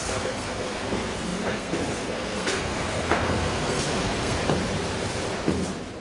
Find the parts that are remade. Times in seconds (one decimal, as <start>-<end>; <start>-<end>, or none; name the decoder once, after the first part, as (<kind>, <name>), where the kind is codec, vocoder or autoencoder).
0.0-4.4 (codec, SNAC)